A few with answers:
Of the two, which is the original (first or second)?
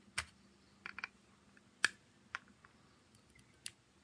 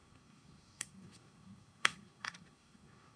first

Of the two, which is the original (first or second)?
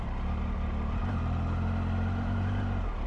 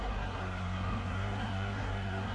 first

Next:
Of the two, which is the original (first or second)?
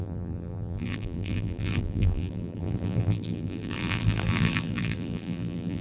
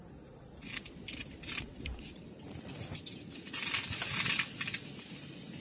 second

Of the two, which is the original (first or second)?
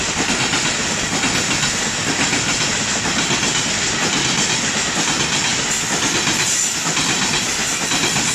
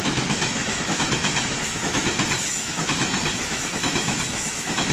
first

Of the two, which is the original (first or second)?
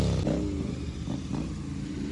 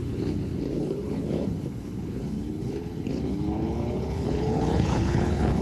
first